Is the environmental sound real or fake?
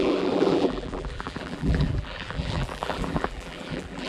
fake